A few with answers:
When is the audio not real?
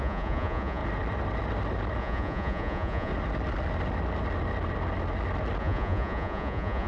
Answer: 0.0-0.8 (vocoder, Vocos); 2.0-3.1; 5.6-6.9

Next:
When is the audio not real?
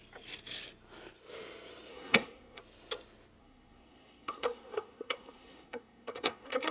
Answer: 1.9-2.6 (codec, SNAC); 3.4-6.7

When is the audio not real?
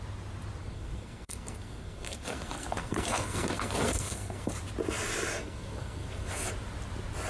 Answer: 0.6-4.5 (codec, SNAC); 5.4-6.5